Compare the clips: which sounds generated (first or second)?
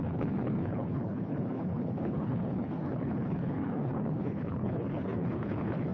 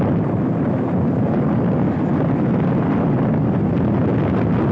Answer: first